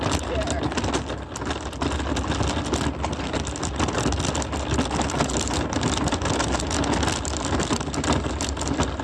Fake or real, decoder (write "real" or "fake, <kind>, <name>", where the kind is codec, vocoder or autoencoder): real